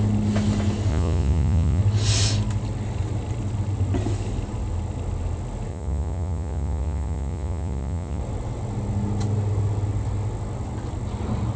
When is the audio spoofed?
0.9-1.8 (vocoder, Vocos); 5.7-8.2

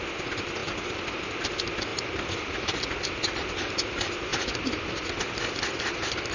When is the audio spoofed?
none

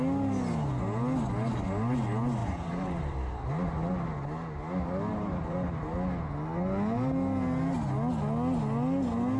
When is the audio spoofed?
2.4-3.0 (vocoder, BigVGAN v2); 5.1-5.8

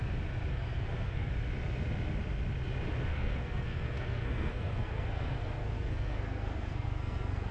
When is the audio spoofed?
0.5-1.3 (codec, SNAC); 3.1-7.5